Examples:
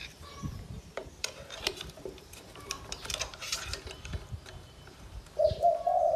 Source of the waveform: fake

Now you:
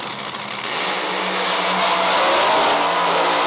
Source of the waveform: real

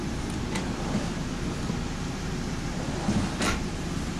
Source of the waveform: fake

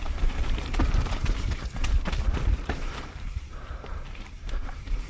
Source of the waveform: fake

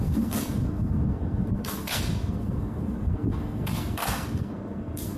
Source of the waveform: fake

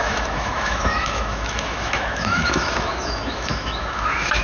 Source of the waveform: fake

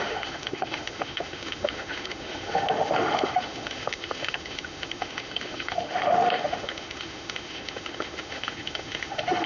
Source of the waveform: fake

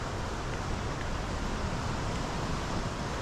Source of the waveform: real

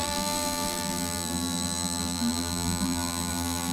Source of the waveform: fake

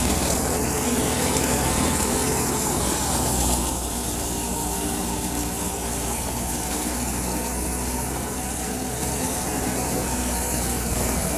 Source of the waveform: fake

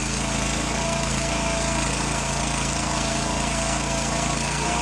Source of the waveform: fake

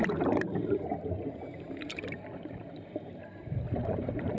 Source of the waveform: fake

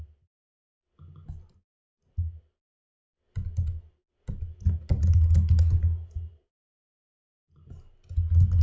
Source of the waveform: real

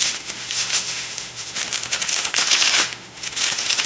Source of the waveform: fake